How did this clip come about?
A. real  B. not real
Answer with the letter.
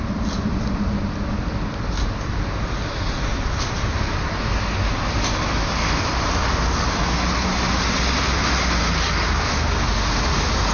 A